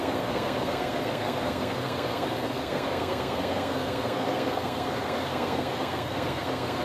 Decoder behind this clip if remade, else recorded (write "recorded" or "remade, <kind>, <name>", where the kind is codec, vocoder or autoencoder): remade, codec, SNAC